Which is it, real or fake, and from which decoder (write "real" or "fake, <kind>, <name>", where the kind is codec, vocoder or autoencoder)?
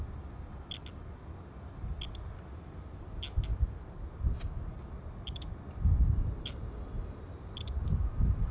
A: real